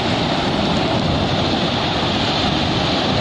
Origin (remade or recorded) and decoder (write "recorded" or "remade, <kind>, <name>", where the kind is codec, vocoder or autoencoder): recorded